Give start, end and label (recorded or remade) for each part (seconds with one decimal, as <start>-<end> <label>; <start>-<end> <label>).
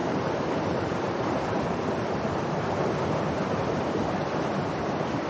0.0-3.1 remade; 3.1-4.0 recorded; 4.0-4.5 remade; 4.5-5.3 recorded